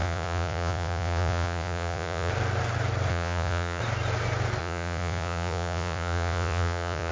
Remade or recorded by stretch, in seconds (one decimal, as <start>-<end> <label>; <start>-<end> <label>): 0.0-2.3 remade; 2.3-3.1 recorded; 3.1-3.8 remade; 3.8-4.6 recorded; 4.6-7.1 remade